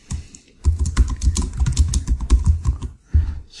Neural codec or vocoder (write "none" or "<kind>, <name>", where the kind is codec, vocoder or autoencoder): none